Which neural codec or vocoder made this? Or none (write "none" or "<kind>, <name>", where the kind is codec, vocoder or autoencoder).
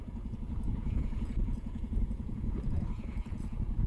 vocoder, Vocos